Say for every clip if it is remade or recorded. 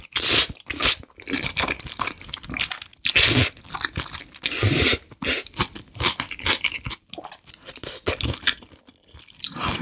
recorded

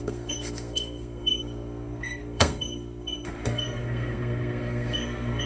remade